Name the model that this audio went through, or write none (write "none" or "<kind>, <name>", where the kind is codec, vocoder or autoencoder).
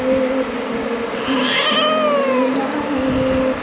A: none